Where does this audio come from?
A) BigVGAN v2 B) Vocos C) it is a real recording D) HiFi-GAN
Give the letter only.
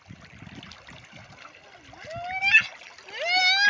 C